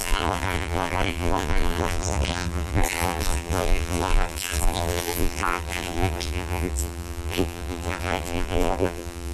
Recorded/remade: remade